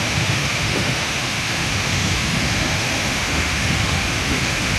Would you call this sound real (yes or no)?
no